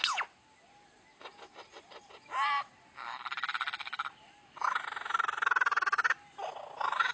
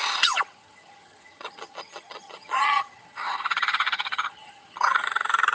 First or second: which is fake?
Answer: second